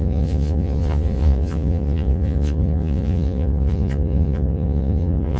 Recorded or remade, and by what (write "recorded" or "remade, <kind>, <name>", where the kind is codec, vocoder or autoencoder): remade, vocoder, Vocos